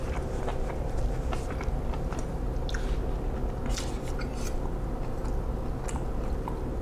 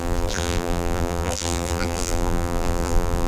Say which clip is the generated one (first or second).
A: second